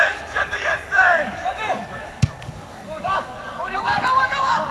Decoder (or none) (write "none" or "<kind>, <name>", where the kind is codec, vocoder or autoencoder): codec, DAC